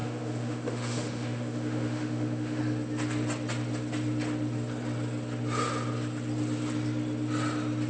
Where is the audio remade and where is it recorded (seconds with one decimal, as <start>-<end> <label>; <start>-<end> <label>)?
0.0-2.6 remade; 2.6-7.9 recorded